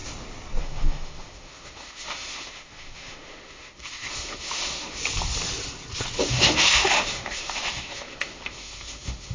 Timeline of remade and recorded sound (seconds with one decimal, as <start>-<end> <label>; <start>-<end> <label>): 0.0-0.6 recorded; 0.6-5.0 remade; 5.0-6.2 recorded; 6.2-9.3 remade